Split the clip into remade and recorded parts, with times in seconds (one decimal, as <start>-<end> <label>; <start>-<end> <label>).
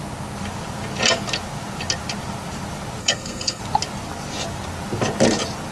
0.0-3.0 recorded; 3.0-3.6 remade; 3.6-5.7 recorded